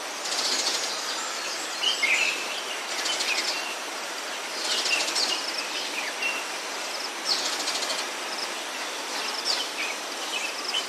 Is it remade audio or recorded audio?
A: recorded